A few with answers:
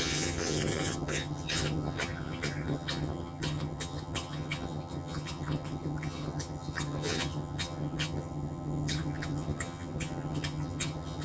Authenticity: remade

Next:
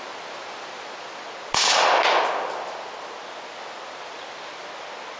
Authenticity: recorded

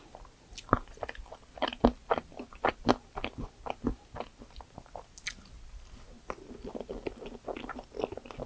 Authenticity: recorded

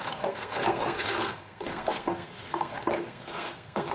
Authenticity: remade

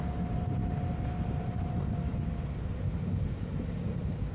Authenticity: recorded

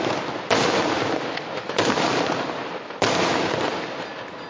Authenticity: recorded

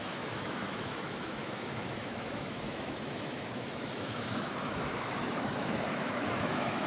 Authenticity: remade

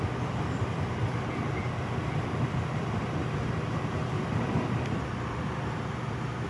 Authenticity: remade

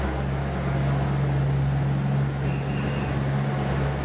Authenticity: recorded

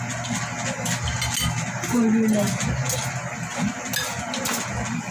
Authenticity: recorded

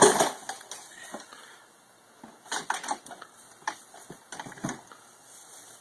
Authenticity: recorded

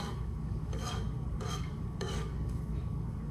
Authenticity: remade